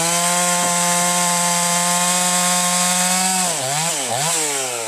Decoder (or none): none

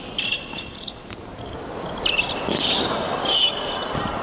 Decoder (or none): none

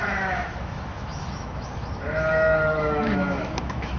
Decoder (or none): autoencoder, DAC-VAE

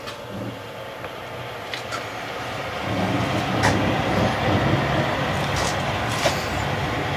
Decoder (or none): none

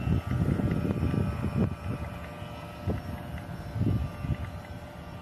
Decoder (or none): none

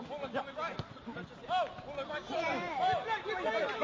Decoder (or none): none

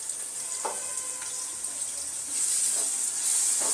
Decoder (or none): none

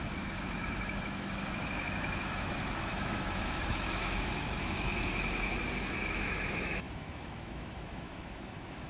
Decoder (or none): autoencoder, DAC-VAE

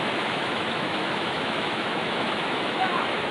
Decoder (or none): autoencoder, DAC-VAE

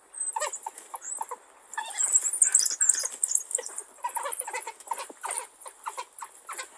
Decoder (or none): none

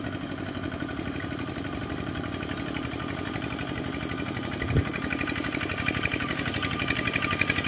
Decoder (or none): none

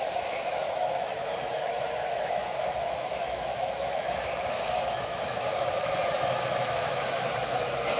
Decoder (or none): autoencoder, DAC-VAE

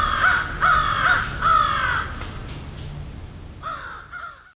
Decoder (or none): none